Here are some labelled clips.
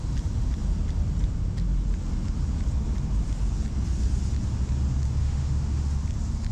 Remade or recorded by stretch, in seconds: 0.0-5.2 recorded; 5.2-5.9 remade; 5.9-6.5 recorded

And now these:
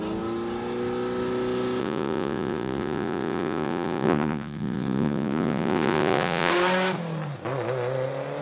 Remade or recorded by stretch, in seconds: 0.0-1.8 recorded; 1.8-6.5 remade; 6.5-8.4 recorded